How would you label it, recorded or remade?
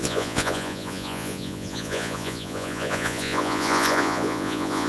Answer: remade